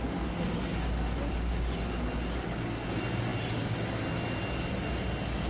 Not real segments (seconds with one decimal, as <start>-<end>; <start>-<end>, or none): none